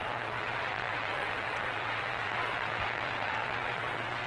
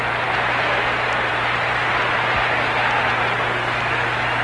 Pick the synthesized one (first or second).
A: first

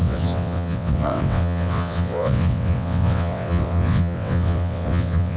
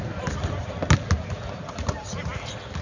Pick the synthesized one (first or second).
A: first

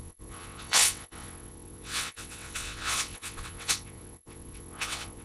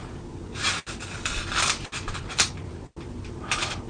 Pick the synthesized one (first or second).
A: first